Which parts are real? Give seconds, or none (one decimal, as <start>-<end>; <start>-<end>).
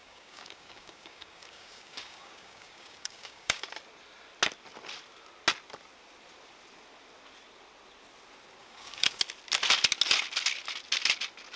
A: 3.6-8.6; 9.2-11.6